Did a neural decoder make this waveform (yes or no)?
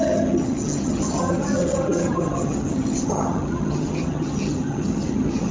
yes